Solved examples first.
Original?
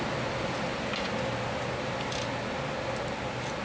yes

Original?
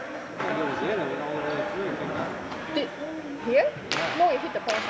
yes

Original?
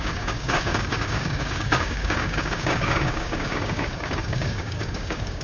no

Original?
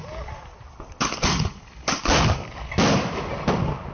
yes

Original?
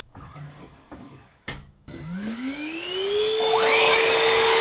no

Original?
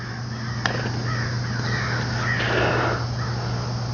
yes